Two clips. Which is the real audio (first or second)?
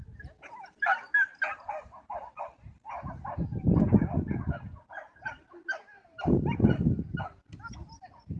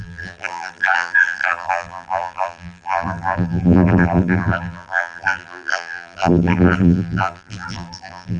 first